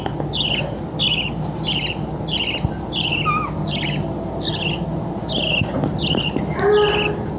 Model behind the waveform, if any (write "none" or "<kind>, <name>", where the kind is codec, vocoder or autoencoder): none